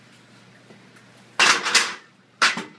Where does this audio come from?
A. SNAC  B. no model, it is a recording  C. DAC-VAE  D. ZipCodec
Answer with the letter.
B